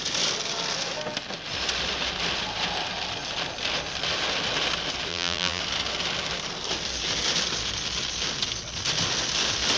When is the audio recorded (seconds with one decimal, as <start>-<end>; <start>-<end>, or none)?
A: 0.0-5.1; 5.6-9.8